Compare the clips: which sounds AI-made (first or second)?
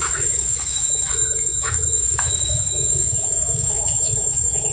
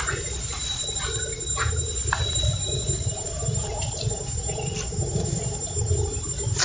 first